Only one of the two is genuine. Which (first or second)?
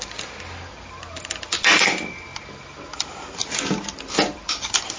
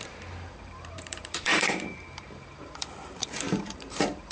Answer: first